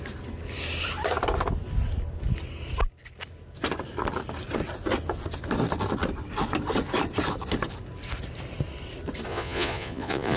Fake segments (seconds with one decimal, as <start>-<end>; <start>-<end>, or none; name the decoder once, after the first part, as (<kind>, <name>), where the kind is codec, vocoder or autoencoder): 9.3-10.4 (vocoder, Vocos)